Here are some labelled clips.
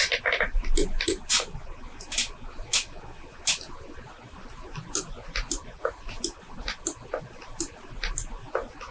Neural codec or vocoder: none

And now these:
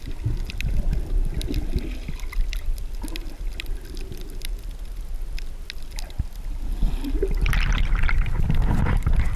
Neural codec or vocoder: none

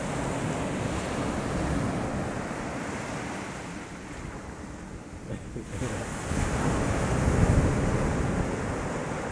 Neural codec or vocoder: none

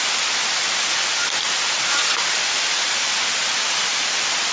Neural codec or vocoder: none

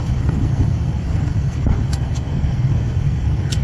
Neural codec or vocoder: codec, SNAC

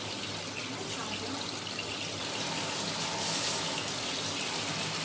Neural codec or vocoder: none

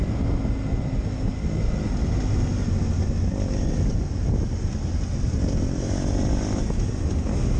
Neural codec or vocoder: none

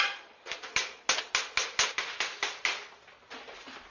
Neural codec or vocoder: none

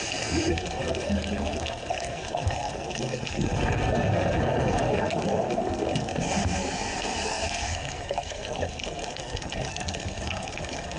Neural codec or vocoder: codec, SNAC